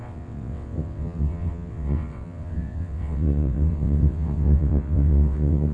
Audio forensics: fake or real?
fake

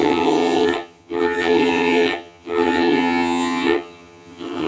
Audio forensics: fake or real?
fake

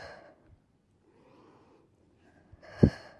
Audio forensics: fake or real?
real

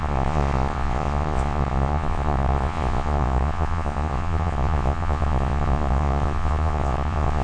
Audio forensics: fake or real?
fake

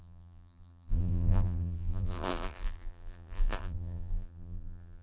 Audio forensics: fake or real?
fake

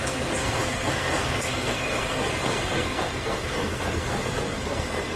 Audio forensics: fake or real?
fake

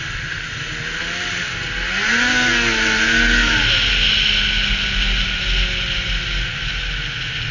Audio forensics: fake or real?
real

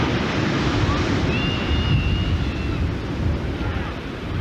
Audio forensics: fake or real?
real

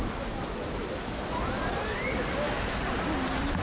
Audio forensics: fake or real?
real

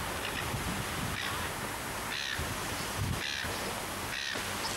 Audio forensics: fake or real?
real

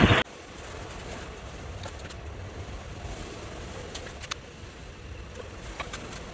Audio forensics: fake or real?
real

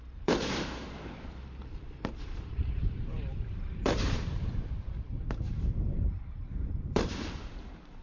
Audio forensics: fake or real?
fake